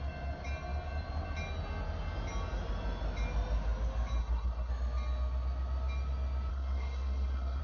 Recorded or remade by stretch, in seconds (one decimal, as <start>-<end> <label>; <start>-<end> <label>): 0.0-4.2 recorded; 4.2-4.7 remade; 4.7-6.5 recorded; 6.5-7.6 remade